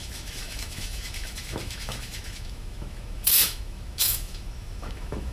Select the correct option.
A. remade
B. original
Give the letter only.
A